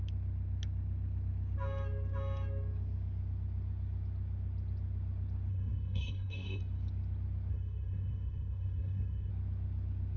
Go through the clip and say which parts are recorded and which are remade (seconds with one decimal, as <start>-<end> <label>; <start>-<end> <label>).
0.0-5.5 recorded; 5.5-6.6 remade; 6.6-7.5 recorded; 7.5-9.3 remade; 9.3-10.2 recorded